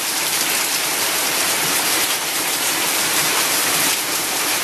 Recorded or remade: remade